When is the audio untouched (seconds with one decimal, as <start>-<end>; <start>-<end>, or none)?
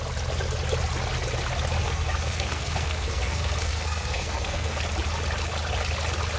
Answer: 0.0-1.8; 4.8-6.4